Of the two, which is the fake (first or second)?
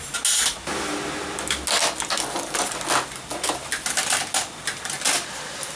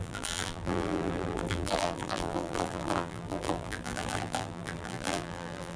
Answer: second